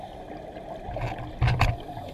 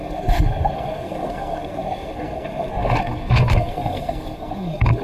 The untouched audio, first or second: first